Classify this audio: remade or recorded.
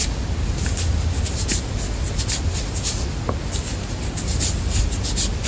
recorded